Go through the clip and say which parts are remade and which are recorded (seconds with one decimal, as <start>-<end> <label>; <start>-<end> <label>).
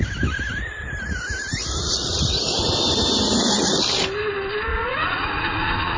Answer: 0.0-4.7 recorded; 4.7-6.0 remade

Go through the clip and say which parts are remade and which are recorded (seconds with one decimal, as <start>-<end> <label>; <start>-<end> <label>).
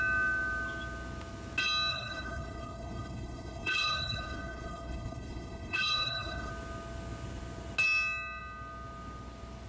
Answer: 0.0-1.9 recorded; 1.9-6.5 remade; 6.5-9.7 recorded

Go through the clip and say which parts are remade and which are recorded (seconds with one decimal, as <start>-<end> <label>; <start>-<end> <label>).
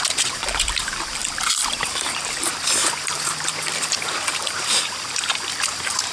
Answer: 0.0-6.1 remade